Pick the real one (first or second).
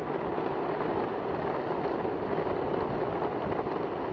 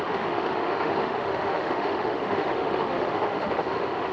first